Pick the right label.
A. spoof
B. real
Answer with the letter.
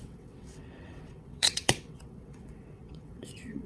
A